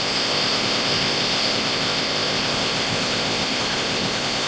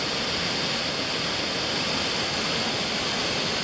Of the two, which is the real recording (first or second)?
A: second